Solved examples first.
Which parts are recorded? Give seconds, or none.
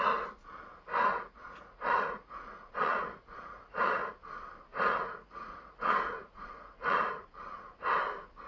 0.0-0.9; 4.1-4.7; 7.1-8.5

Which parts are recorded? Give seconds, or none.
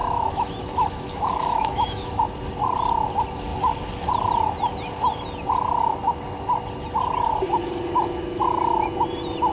2.2-9.5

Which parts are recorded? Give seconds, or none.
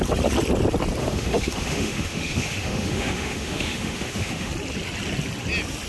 0.0-1.0; 4.5-5.9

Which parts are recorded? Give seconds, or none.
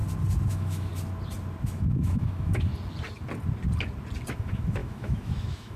0.0-0.5; 0.9-1.6; 2.7-4.3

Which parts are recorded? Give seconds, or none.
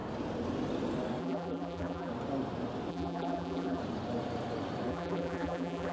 0.0-1.2; 2.1-2.9; 3.8-4.9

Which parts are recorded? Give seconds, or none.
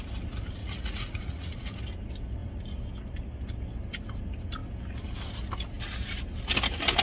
0.0-0.6; 1.8-7.0